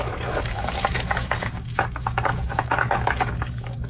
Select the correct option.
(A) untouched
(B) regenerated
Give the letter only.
B